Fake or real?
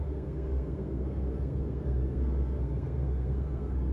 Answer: fake